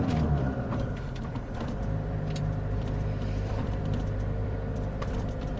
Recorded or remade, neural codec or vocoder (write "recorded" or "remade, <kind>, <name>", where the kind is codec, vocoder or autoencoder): remade, vocoder, BigVGAN v2